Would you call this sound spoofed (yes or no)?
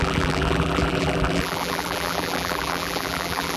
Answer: yes